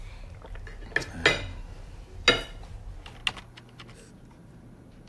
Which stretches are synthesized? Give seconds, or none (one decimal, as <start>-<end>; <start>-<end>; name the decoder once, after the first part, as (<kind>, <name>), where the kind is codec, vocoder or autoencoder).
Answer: none